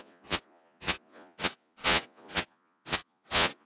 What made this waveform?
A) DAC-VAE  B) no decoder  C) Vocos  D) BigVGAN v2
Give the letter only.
C